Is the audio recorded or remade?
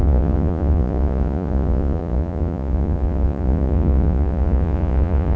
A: remade